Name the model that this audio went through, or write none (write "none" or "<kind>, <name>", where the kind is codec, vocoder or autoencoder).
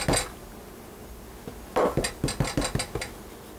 none